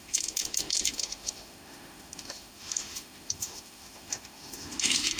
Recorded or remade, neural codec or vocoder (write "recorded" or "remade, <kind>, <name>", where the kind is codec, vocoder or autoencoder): remade, autoencoder, DAC-VAE